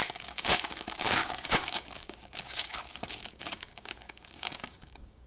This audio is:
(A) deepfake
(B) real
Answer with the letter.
A